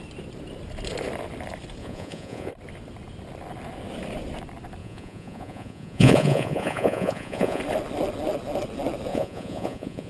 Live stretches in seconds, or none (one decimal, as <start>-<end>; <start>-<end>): 0.0-1.8; 2.5-4.8; 7.6-9.1